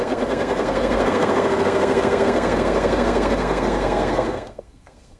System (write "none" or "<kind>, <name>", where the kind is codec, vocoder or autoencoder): codec, SNAC